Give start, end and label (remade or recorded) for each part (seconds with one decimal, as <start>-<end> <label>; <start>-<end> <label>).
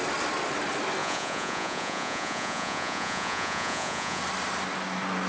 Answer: 0.0-1.0 recorded; 1.0-4.2 remade; 4.2-5.3 recorded